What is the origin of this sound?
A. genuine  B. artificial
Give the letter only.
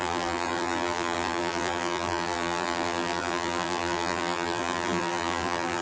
B